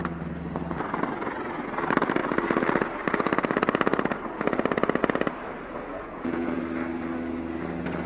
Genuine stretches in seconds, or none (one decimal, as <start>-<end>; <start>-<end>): 0.0-5.9; 6.6-8.1